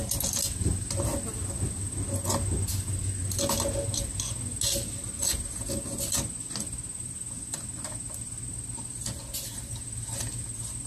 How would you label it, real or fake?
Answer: real